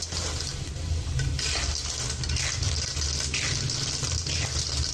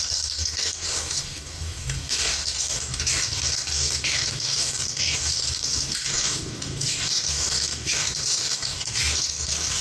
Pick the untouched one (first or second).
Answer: first